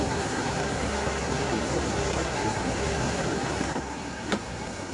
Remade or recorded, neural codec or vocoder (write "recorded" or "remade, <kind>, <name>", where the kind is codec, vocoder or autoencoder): remade, codec, SNAC